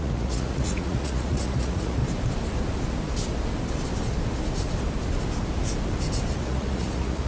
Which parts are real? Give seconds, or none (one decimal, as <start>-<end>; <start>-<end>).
2.0-6.4